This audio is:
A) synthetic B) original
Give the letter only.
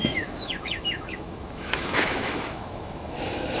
A